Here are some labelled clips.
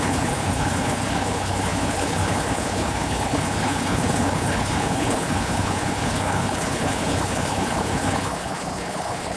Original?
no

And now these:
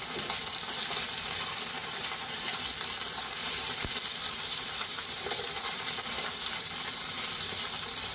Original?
no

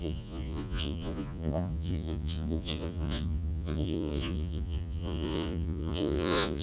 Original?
no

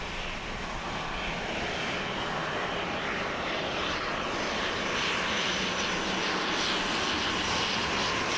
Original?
yes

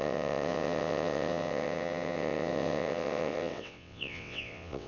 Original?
no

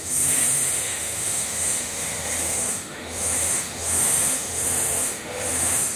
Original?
no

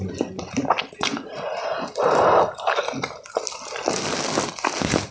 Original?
yes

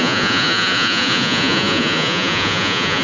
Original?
no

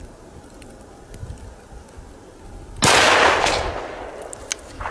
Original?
yes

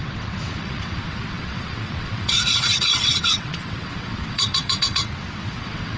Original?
no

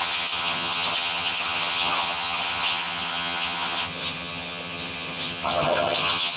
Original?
no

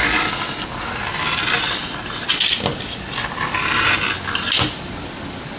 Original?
yes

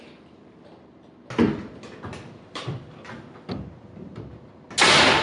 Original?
yes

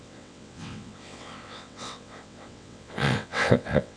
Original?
no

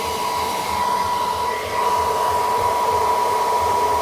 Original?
yes